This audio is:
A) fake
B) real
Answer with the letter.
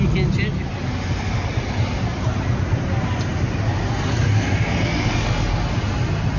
B